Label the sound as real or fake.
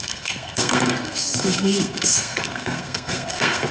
fake